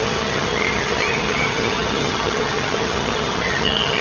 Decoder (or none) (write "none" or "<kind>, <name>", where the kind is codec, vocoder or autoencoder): vocoder, HiFi-GAN